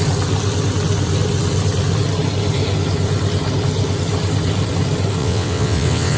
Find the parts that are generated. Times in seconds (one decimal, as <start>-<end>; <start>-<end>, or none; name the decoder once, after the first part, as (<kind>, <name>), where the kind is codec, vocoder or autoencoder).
5.2-6.2 (vocoder, WaveNeXt)

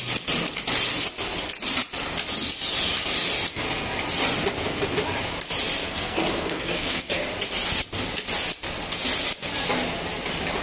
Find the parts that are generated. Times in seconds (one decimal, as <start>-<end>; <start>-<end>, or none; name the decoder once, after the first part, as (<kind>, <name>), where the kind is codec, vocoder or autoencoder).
5.8-7.2 (codec, SNAC)

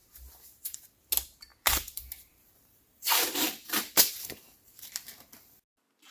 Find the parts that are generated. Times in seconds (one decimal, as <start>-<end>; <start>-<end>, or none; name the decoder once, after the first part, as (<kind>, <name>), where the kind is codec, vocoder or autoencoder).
0.0-0.8 (vocoder, BigVGAN v2); 1.5-4.9

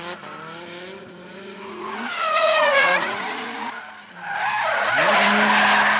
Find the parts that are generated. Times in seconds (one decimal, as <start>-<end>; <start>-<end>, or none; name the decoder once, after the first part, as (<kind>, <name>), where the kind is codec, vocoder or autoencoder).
1.0-3.8 (vocoder, Vocos)

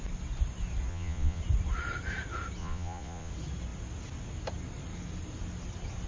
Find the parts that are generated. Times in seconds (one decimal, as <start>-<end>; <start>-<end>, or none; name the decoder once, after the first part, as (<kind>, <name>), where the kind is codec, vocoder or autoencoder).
0.9-1.4 (vocoder, Vocos); 2.6-3.3

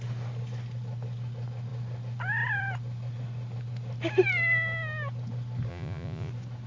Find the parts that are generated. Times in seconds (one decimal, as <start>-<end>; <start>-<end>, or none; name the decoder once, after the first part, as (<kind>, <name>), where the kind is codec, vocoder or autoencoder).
5.7-6.3 (vocoder, Vocos)

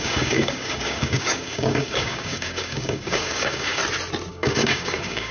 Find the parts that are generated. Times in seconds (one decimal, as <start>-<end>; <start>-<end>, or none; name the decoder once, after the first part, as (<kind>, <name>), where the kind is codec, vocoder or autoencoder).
0.0-3.8 (codec, DAC); 4.3-5.3